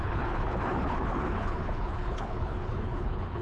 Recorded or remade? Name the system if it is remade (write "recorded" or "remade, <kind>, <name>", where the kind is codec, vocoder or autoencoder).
remade, codec, HILCodec